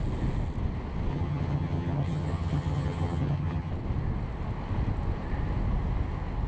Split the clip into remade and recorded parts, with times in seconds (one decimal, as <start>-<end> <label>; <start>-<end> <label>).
0.0-1.1 recorded; 1.1-3.7 remade; 3.7-6.5 recorded